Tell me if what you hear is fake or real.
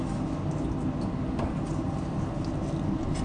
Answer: real